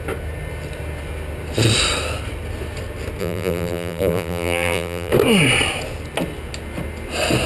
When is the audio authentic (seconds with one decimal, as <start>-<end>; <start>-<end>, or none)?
0.0-3.2; 5.1-7.5